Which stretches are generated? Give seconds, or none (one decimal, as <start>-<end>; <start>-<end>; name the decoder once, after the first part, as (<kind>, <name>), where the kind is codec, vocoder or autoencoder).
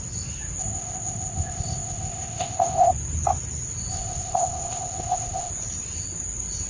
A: 0.6-2.9 (codec, ZipCodec); 3.9-5.5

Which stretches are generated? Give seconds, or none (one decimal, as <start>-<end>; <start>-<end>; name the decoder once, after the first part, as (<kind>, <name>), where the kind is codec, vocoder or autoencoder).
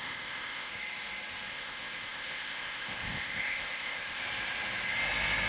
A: 0.0-0.7 (codec, ZipCodec); 1.5-4.2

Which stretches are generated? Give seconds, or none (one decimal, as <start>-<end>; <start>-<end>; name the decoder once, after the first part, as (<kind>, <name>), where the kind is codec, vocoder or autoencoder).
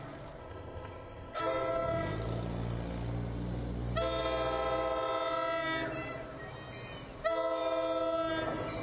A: 0.4-1.4 (codec, ZipCodec)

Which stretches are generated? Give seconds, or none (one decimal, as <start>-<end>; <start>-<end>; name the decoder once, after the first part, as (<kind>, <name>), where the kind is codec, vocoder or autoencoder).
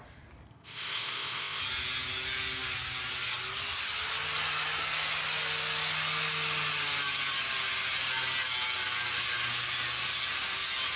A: 0.5-1.6 (codec, ZipCodec)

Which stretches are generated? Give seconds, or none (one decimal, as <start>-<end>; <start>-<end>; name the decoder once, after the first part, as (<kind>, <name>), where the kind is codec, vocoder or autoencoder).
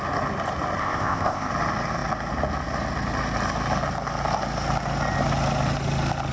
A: 0.8-1.5 (codec, ZipCodec)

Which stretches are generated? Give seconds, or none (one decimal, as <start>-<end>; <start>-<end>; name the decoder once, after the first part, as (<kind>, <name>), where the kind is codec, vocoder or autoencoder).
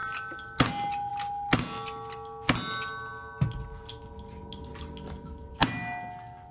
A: none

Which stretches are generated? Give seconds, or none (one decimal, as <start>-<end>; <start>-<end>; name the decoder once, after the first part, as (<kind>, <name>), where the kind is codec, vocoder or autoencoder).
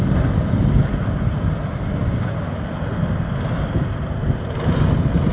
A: none